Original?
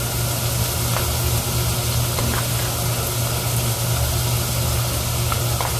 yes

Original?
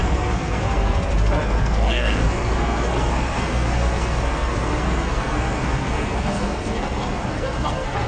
no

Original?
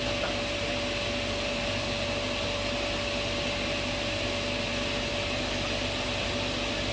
yes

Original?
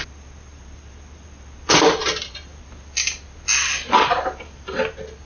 yes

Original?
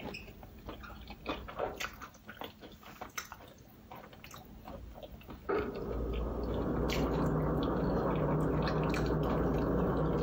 yes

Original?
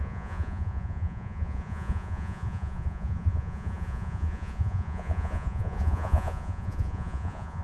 no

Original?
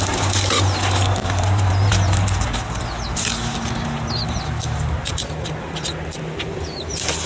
yes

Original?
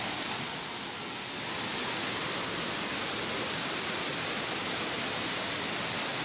yes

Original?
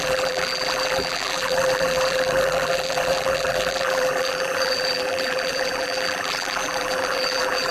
no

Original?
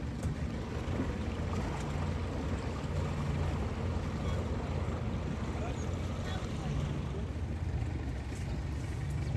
yes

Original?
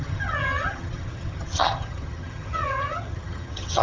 no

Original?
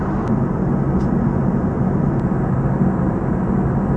yes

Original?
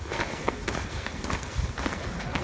no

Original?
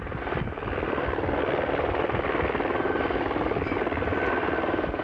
yes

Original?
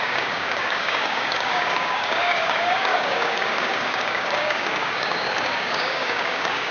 no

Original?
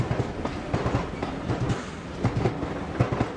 yes